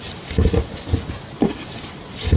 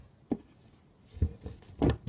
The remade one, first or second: first